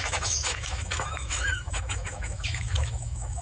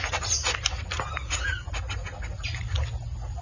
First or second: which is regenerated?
first